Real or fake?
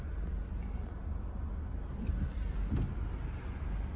real